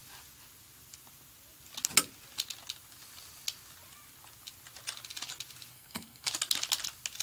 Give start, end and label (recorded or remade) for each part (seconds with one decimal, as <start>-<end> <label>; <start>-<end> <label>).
0.0-5.7 recorded; 5.7-6.3 remade; 6.3-7.2 recorded